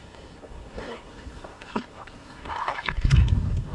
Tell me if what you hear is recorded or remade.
remade